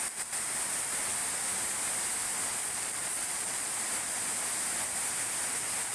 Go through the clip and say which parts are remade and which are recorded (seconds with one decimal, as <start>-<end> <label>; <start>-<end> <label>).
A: 0.0-2.6 recorded; 2.6-3.7 remade; 3.7-5.9 recorded